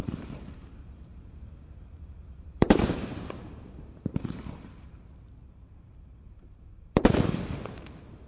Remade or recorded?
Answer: remade